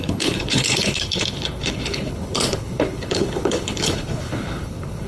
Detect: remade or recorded remade